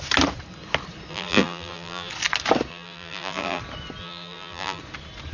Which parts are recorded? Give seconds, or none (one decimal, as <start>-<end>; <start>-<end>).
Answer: 0.0-1.1; 2.1-2.7; 3.6-4.0; 4.8-5.3